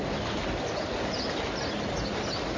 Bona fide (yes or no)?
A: yes